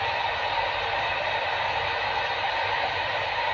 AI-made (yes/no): no